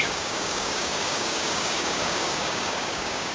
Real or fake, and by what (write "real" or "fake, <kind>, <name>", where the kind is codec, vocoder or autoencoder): fake, codec, DAC